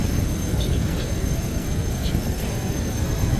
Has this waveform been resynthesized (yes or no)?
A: yes